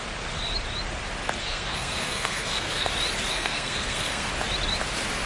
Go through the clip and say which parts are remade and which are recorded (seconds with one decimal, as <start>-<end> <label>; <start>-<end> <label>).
0.0-1.4 recorded; 1.4-2.9 remade; 2.9-3.3 recorded; 3.3-4.3 remade; 4.3-5.3 recorded